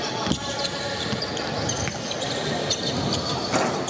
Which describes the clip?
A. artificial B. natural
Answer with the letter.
B